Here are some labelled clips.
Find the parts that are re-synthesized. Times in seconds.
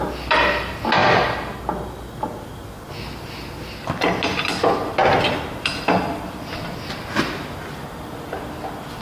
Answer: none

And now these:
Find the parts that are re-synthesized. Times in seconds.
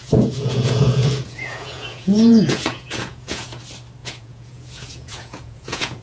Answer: 0.0-3.6 (vocoder, Vocos); 4.0-6.0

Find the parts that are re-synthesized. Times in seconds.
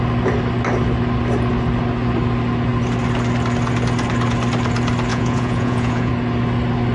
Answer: 5.1-6.1 (vocoder, Vocos)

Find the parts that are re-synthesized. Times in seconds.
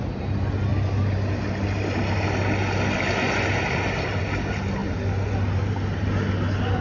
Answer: none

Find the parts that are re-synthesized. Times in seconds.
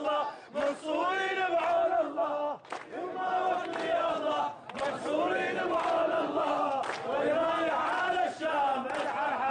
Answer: 6.0-6.7 (vocoder, Vocos)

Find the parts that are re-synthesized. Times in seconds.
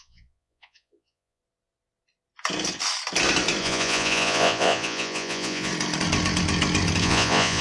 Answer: 0.0-1.4 (vocoder, Vocos); 3.6-5.7; 7.0-7.6